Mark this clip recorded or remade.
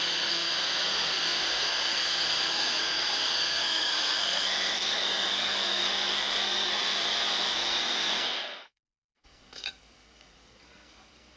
remade